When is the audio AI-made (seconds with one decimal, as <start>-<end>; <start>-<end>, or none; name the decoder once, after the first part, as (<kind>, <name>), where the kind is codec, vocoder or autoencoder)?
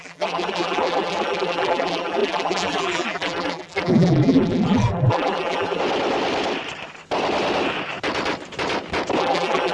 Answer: 0.0-5.8 (vocoder, BigVGAN v2); 9.2-9.7